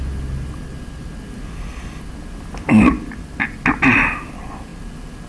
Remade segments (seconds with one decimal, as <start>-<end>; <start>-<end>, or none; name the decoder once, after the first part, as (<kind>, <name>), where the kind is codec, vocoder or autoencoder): none